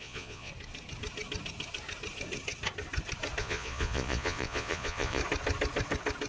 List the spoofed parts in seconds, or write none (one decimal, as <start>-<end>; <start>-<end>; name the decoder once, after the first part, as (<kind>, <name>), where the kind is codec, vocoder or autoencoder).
0.0-0.5 (vocoder, Vocos); 3.4-5.2